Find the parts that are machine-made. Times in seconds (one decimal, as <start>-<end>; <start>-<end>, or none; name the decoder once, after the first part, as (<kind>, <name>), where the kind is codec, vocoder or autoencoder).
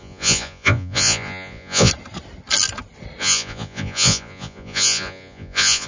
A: 0.0-1.9 (vocoder, Vocos); 3.2-5.9